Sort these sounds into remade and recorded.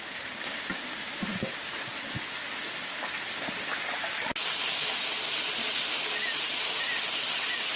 recorded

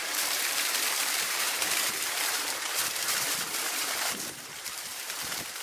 remade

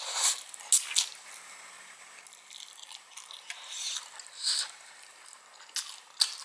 recorded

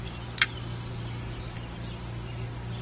recorded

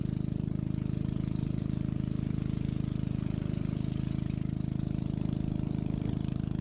remade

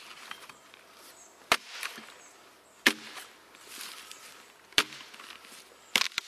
recorded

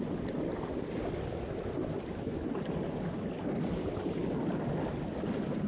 recorded